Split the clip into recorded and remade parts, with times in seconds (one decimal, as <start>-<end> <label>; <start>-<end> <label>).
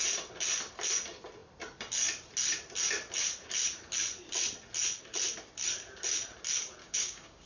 0.0-6.8 recorded; 6.8-7.5 remade